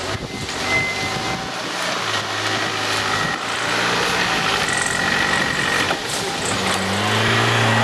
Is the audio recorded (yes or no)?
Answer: yes